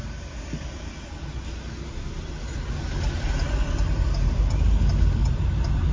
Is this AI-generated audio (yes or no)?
no